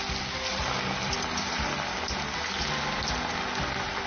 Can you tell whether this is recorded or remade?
recorded